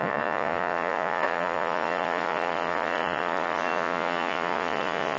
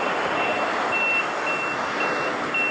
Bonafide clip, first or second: second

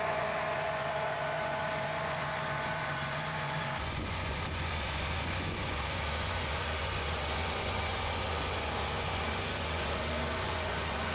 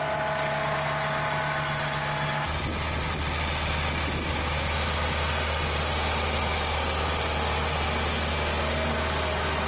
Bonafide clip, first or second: second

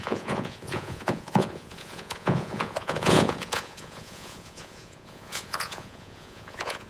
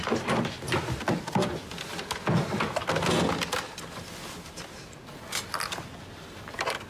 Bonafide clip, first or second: second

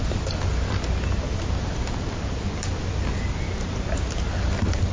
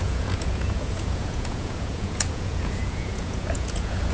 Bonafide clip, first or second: first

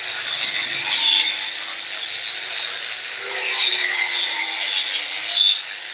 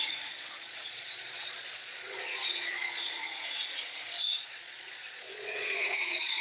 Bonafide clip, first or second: first